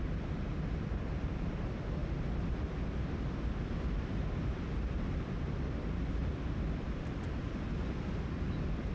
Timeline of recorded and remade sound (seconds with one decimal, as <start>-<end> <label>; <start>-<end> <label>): 0.0-8.9 recorded